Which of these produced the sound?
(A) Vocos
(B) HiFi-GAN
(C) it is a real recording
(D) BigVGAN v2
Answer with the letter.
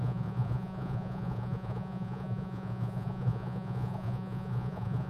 A